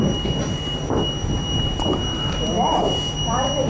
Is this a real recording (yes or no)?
yes